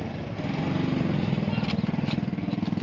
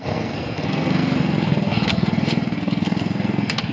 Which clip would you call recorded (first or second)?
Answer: first